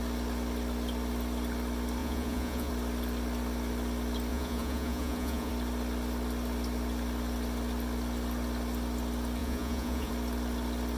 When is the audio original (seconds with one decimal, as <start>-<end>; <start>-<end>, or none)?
0.0-2.0; 2.7-4.3; 5.5-9.4; 10.1-11.0

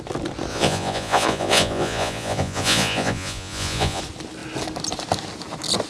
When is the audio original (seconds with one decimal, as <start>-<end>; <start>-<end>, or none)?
0.0-0.5; 4.0-5.9

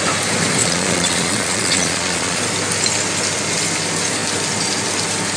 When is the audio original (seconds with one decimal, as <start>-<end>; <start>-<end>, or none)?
0.0-0.6; 2.4-5.4

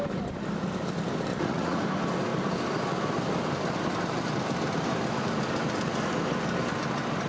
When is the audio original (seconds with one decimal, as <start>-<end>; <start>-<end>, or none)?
0.0-1.3; 1.8-7.3

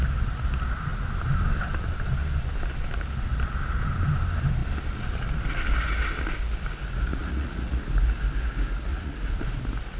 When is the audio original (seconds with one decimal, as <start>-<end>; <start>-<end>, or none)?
0.0-7.1; 7.8-8.9; 9.4-10.0

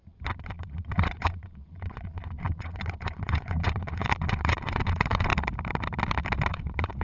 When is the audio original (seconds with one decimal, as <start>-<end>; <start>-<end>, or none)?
5.3-6.5

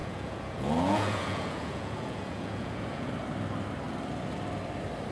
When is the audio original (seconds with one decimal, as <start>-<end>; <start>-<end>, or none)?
3.1-5.1

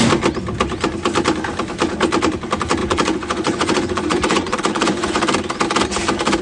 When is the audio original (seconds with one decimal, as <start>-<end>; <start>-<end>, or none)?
0.0-2.8; 5.2-6.4